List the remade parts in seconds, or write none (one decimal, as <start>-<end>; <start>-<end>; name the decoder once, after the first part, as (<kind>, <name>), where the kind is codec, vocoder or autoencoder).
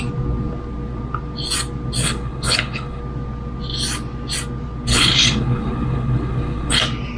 2.0-3.0 (codec, HILCodec); 4.9-6.8